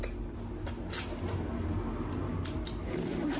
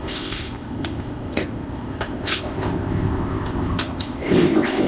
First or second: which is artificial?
second